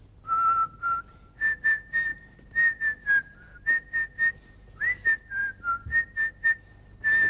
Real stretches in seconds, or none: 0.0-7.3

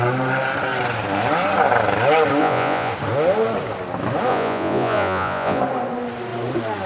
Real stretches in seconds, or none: 0.0-2.4; 2.9-4.3; 5.6-6.9

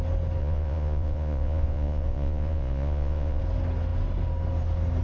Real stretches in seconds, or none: 0.0-0.4; 3.4-5.0

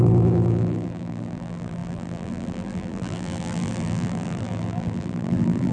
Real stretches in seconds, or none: none

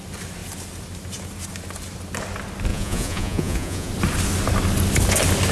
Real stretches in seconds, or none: 0.0-2.7; 3.9-5.5

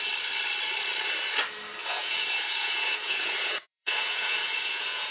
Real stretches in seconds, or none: 0.0-1.8

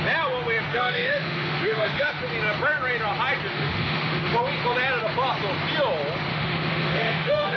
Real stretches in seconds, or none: 0.0-0.7; 2.2-3.5; 4.3-6.3

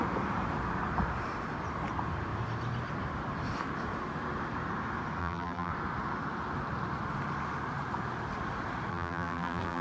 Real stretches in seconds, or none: 0.0-5.2; 5.7-8.9